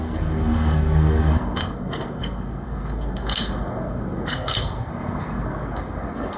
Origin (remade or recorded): remade